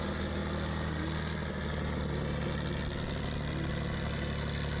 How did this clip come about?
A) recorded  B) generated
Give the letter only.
A